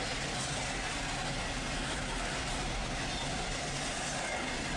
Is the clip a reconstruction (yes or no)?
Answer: no